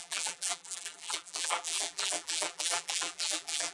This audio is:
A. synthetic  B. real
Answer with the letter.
A